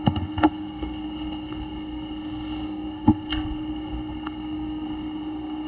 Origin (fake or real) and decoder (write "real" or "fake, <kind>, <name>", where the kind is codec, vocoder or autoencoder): fake, codec, SNAC